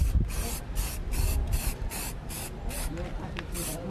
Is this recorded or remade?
recorded